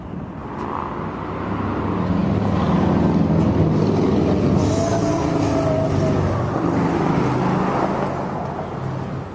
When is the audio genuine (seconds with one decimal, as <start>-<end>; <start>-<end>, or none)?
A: 0.0-9.3